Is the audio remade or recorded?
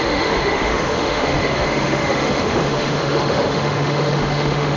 remade